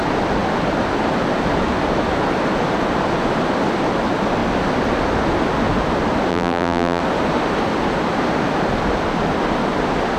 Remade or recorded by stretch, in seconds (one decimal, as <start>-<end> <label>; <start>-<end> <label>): 0.0-6.3 recorded; 6.3-7.0 remade; 7.0-10.2 recorded